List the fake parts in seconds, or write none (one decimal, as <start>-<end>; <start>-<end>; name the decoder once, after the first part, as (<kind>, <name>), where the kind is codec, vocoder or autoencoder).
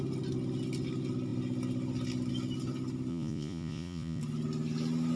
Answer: 3.1-4.2 (vocoder, Vocos)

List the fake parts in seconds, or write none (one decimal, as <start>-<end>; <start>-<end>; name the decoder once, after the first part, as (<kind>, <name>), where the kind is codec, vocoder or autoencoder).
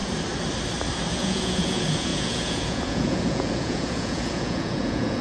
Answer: 1.1-5.2 (vocoder, Vocos)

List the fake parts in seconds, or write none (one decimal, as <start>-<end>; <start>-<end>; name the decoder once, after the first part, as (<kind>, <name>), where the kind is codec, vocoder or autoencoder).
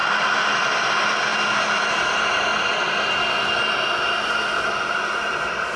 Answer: none